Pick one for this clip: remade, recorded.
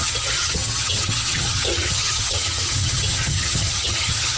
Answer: remade